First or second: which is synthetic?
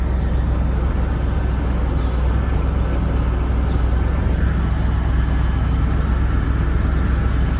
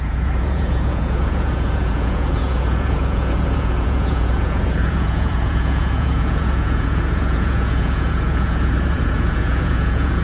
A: second